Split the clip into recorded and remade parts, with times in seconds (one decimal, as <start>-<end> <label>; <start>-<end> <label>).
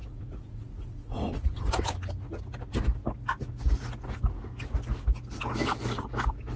0.0-1.7 remade; 1.7-6.6 recorded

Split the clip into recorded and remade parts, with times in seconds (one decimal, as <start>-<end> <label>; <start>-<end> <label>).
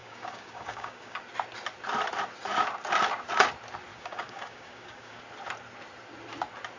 0.0-1.2 remade; 1.2-3.9 recorded; 3.9-5.2 remade; 5.2-6.8 recorded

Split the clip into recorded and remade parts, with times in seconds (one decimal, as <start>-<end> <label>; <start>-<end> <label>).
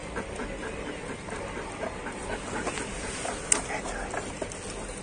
0.0-5.0 recorded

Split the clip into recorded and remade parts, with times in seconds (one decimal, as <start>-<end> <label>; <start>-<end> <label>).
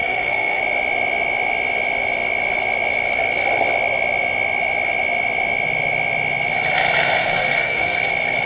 0.0-0.6 remade; 0.6-7.2 recorded; 7.2-8.1 remade; 8.1-8.5 recorded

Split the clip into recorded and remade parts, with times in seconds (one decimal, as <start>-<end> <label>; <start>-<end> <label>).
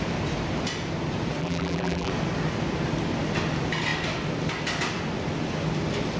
0.0-1.4 recorded; 1.4-2.1 remade; 2.1-6.2 recorded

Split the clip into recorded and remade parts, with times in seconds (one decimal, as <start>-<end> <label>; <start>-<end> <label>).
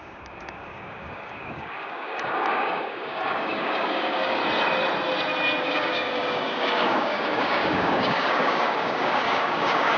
0.0-4.4 remade; 4.4-5.6 recorded; 5.6-10.0 remade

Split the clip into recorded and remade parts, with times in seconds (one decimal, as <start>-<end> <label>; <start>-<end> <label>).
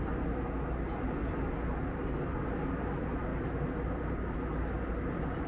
0.0-5.5 recorded